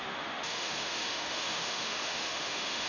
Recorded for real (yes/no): no